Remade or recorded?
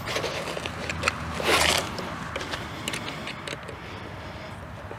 recorded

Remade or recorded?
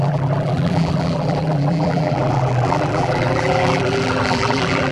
remade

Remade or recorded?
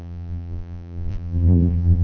remade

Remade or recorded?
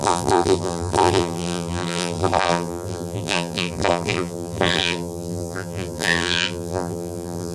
remade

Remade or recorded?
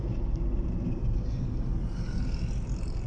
recorded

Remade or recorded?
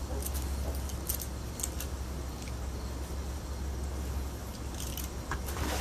recorded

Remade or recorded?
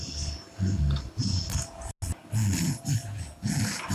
recorded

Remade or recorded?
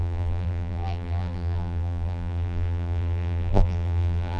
remade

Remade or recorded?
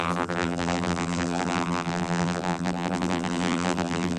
remade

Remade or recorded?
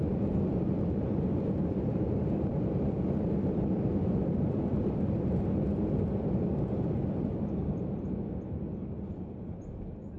remade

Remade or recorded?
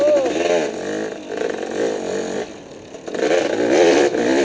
recorded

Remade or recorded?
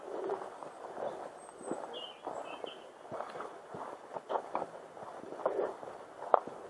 recorded